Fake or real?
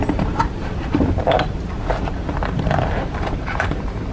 fake